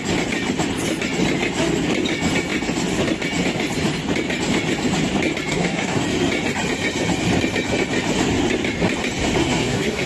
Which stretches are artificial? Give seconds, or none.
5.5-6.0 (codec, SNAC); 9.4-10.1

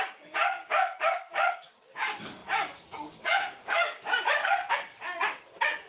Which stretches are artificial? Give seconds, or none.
0.0-5.9 (codec, DAC)

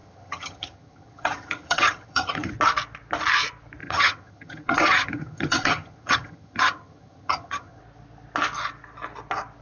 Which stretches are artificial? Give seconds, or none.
0.0-2.5 (vocoder, HiFi-GAN); 3.8-7.8

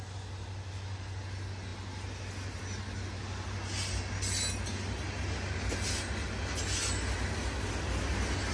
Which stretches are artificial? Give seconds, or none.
none

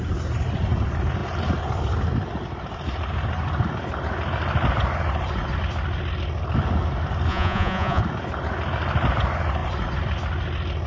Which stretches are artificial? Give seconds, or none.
7.3-8.0 (vocoder, Vocos)

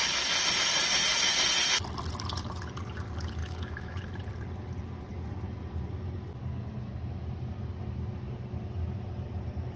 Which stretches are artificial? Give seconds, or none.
3.4-4.1 (autoencoder, DAC-VAE)